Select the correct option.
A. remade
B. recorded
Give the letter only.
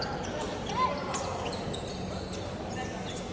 B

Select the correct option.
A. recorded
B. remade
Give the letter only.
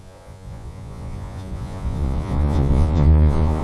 B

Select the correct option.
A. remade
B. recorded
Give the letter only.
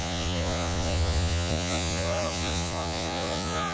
A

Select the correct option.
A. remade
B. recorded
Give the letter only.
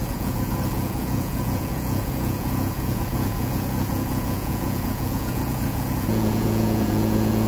A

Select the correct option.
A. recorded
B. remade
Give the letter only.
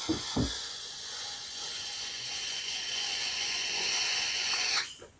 B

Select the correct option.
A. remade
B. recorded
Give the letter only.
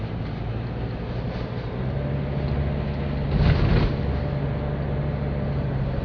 B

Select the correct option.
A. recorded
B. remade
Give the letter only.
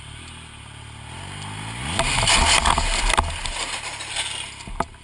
A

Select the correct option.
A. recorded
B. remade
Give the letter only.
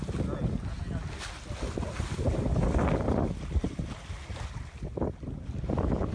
A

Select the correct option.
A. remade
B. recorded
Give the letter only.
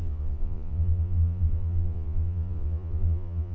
A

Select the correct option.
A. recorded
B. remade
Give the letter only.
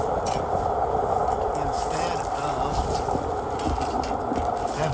A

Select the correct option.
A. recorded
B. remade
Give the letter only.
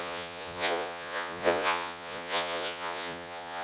B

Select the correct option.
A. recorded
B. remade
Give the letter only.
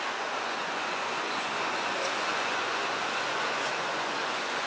B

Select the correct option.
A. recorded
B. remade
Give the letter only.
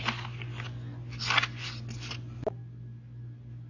A